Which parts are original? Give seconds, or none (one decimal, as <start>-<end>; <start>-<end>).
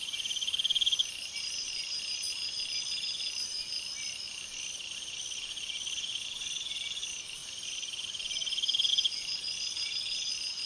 1.8-6.1